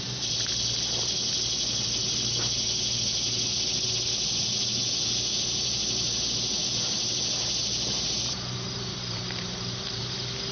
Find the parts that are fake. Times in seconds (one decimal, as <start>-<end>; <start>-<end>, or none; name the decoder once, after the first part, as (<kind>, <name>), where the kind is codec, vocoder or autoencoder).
7.6-10.0 (vocoder, BigVGAN v2)